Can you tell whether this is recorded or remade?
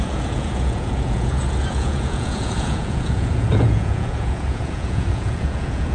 remade